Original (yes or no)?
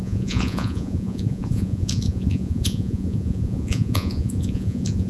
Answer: no